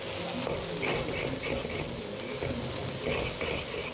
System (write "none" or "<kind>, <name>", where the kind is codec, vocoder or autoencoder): none